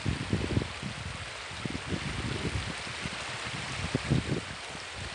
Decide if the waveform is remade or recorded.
recorded